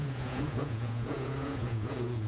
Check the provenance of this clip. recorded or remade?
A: remade